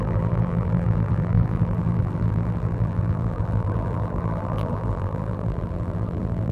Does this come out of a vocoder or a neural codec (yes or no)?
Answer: yes